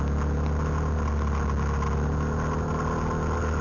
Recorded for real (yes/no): yes